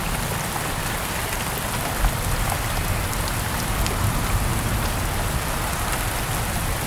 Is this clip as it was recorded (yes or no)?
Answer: yes